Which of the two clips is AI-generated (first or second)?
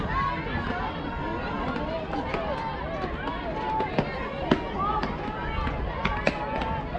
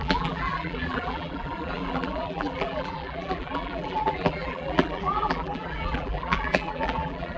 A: second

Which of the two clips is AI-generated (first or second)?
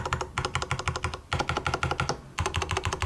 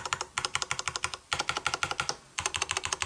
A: second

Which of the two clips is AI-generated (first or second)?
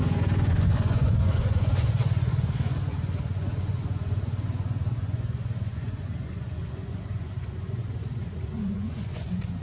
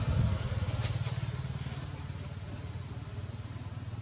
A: first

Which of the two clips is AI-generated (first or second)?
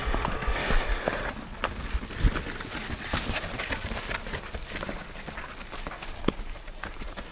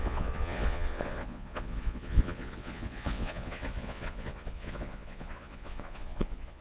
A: second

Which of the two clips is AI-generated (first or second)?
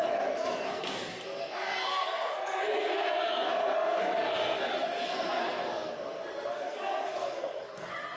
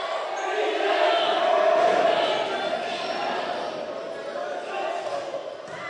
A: first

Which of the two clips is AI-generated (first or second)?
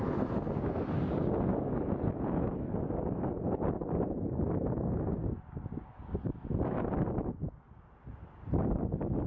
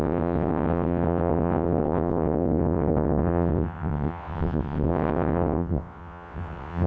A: second